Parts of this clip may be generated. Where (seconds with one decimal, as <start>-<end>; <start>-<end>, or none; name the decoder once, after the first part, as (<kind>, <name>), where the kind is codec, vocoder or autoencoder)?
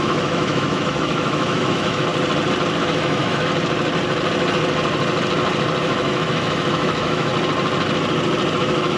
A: 0.0-2.1 (autoencoder, DAC-VAE); 2.8-3.5; 5.8-7.3; 8.6-9.0